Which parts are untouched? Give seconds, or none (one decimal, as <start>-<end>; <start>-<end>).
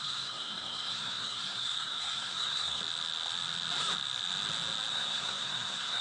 2.8-4.9